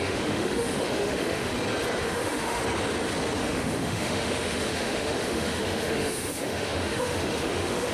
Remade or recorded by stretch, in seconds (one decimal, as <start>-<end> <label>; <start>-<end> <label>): 0.0-1.5 remade; 1.5-2.0 recorded; 2.0-2.6 remade; 2.6-3.4 recorded; 3.4-7.9 remade